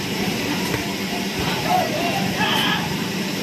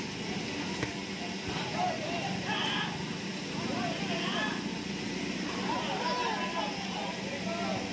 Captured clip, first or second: second